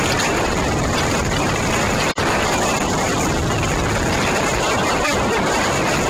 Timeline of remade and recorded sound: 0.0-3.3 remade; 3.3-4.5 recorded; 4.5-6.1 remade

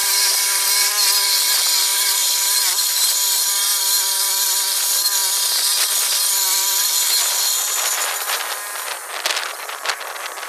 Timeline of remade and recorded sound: 0.0-0.9 remade; 0.9-1.9 recorded; 1.9-4.3 remade; 4.3-10.5 recorded